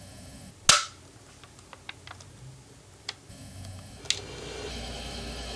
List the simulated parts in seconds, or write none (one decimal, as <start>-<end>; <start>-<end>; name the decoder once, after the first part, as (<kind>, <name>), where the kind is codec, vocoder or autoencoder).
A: 0.0-0.5 (autoencoder, DAC-VAE); 3.3-4.0; 4.7-5.6